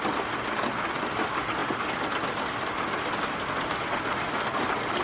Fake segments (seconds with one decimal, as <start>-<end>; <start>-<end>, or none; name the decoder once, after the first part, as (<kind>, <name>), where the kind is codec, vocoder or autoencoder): none